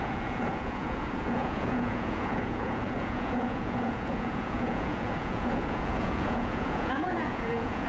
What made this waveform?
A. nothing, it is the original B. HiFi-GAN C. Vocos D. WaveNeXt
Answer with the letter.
C